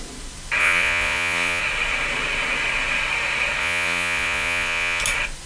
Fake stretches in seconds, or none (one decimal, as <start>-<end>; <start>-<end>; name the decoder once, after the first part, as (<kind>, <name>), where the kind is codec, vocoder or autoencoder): 0.6-1.6 (vocoder, Vocos); 3.6-5.0